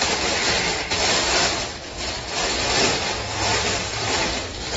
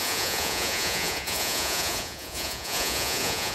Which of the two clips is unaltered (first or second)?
first